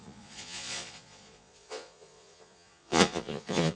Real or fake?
fake